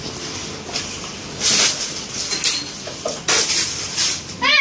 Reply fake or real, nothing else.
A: real